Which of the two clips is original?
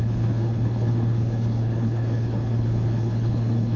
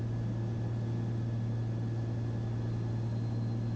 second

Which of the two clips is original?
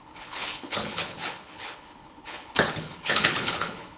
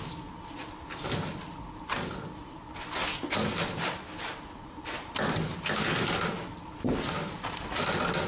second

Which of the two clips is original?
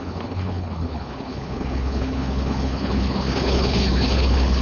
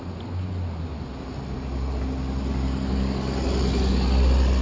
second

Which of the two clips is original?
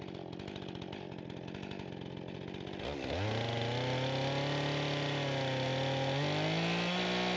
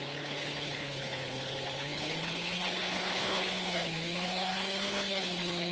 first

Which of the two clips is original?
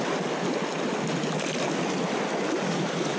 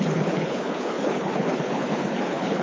first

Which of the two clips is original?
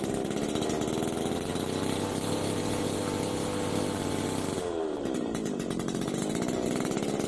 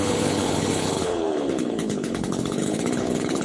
first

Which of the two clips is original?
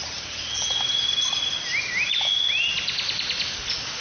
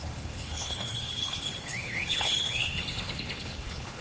first